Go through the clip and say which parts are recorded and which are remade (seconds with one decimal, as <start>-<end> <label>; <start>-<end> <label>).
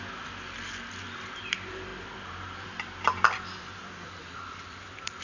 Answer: 0.0-1.9 recorded; 1.9-5.2 remade